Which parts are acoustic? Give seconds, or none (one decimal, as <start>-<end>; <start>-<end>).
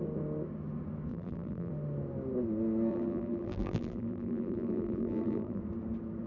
0.0-1.1; 1.7-2.9; 5.6-6.3